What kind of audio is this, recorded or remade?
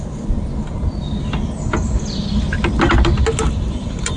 recorded